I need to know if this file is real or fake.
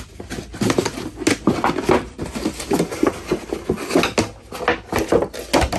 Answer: real